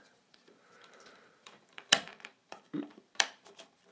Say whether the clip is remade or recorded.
remade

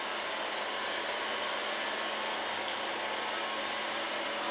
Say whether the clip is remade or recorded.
recorded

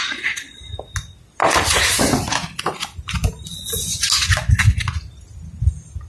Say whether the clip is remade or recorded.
recorded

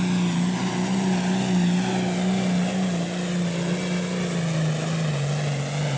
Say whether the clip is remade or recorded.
recorded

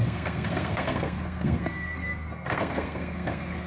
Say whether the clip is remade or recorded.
remade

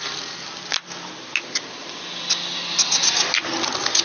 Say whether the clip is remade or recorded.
recorded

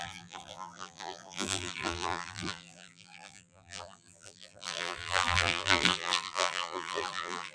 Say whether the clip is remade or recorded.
remade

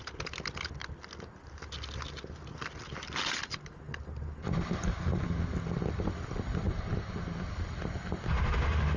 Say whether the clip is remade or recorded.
recorded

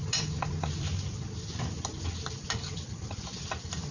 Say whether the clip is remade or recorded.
recorded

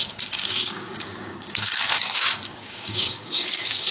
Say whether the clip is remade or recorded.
remade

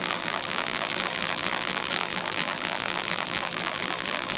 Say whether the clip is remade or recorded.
remade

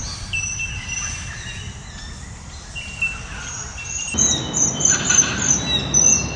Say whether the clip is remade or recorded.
recorded